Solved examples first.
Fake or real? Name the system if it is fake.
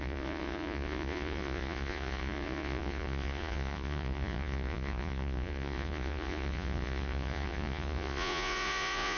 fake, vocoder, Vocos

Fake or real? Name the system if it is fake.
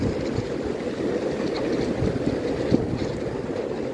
real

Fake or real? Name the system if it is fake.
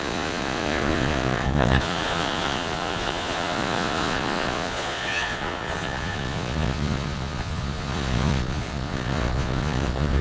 fake, vocoder, Vocos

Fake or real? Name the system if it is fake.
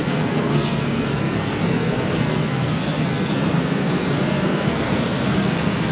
fake, codec, SNAC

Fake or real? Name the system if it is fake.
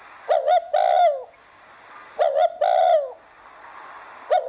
real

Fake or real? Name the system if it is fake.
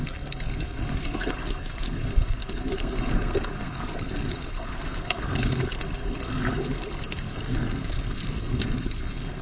fake, codec, SNAC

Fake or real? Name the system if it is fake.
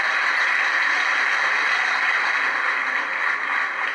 fake, vocoder, BigVGAN v2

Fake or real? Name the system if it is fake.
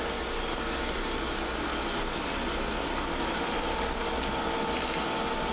real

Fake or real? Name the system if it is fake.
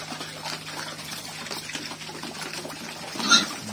real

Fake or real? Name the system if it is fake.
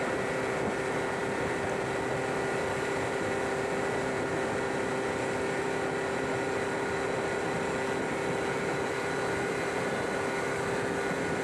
real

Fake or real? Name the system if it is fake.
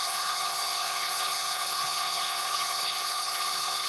fake, codec, HILCodec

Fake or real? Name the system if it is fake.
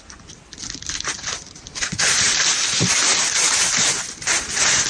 fake, vocoder, BigVGAN v2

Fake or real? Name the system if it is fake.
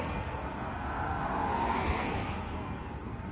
fake, codec, SNAC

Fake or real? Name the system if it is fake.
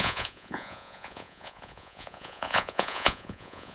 fake, vocoder, Vocos